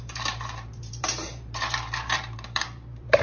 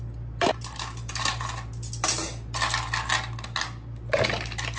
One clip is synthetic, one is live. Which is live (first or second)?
second